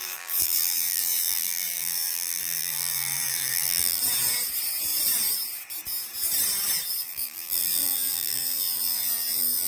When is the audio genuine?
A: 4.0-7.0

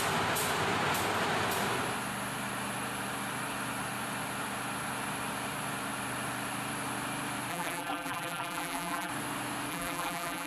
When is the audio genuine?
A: 0.0-7.5; 9.1-9.7

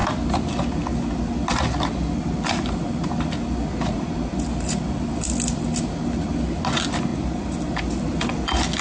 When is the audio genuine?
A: 0.0-8.8

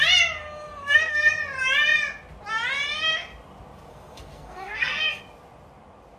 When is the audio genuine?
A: 0.0-0.8; 1.3-3.9; 5.2-6.2